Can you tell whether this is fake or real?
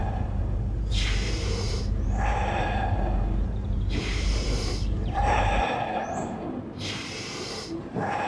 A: fake